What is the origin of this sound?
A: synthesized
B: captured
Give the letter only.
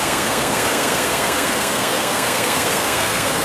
A